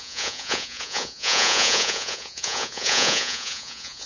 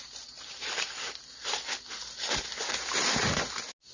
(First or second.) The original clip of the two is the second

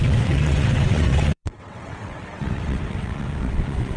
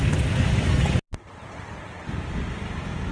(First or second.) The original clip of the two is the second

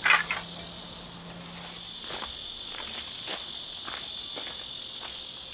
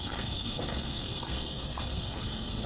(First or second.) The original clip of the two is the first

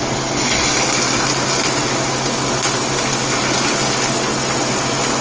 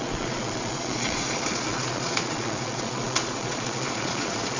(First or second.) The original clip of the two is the first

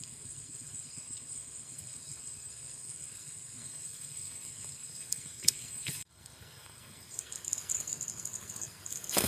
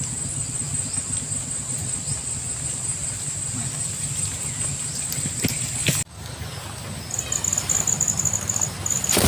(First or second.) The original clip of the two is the second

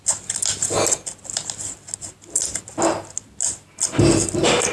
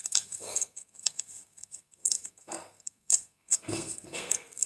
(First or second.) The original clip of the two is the first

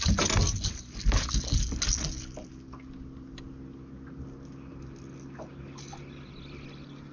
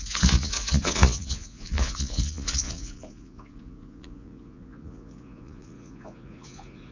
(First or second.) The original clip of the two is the first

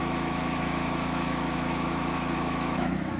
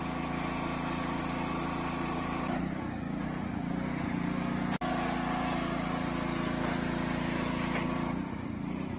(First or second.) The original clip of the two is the second